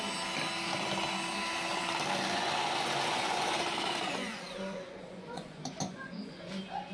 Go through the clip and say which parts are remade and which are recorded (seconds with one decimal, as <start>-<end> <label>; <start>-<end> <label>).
0.0-2.3 recorded; 2.3-6.4 remade; 6.4-6.9 recorded